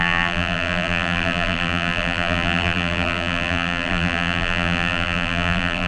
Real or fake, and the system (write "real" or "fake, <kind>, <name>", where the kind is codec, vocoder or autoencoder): fake, vocoder, BigVGAN v2